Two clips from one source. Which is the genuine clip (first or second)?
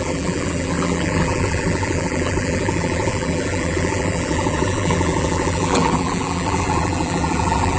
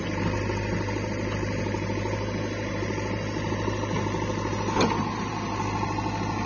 second